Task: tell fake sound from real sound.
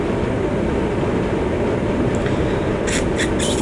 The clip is real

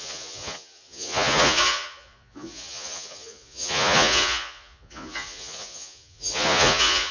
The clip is fake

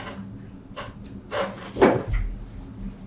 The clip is real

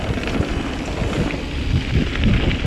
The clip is real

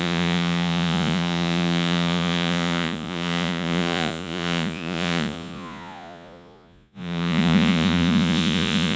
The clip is fake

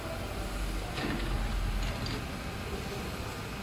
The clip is real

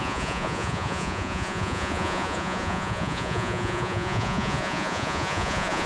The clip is fake